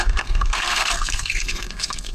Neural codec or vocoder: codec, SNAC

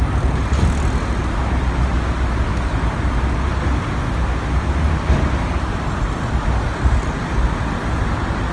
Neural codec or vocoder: none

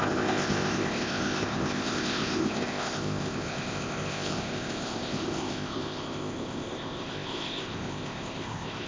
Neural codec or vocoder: codec, ZipCodec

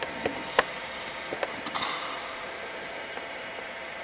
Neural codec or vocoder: vocoder, BigVGAN v2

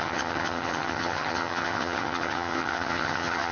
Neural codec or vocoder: vocoder, HiFi-GAN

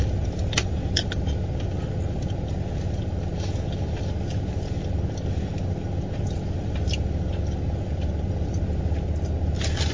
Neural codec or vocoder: none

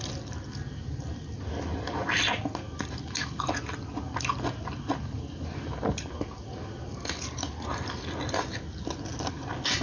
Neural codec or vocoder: none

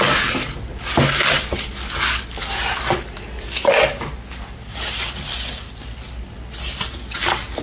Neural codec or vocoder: none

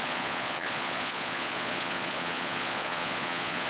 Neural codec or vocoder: vocoder, Vocos